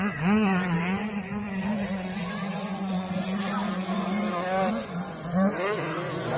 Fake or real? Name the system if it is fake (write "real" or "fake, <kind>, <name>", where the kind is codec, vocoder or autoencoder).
fake, vocoder, Vocos